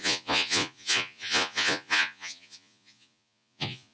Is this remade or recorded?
remade